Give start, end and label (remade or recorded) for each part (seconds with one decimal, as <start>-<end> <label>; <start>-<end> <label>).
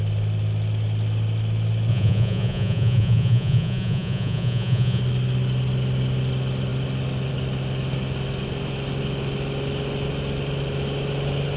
0.0-1.9 recorded; 1.9-5.0 remade; 5.0-11.6 recorded